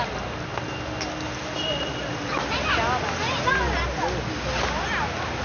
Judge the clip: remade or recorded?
recorded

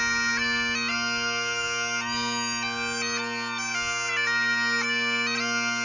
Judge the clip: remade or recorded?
recorded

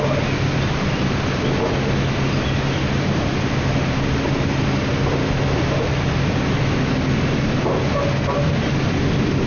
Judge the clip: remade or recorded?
recorded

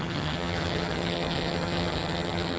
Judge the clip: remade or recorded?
remade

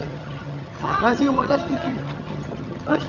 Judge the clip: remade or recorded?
remade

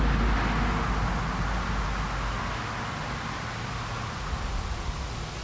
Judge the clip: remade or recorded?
recorded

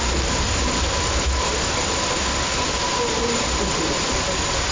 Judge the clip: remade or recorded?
recorded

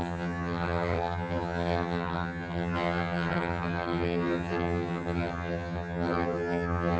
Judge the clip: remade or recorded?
remade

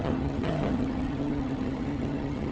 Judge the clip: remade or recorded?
remade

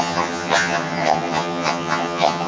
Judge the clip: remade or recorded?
remade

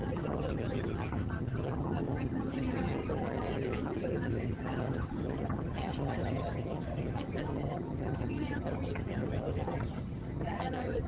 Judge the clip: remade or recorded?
remade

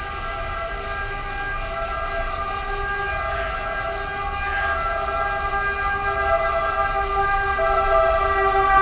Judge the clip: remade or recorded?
recorded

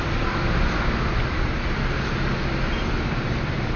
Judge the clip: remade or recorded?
recorded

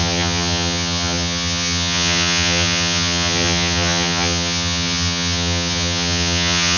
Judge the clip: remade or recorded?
remade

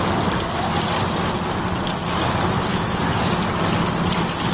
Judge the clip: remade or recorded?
recorded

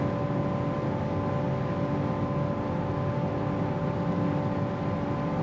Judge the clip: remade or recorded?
recorded